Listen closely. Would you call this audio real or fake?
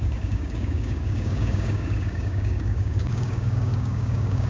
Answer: fake